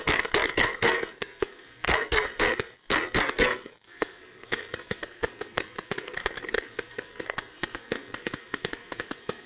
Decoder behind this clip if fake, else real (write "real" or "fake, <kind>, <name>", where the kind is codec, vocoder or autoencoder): fake, codec, SNAC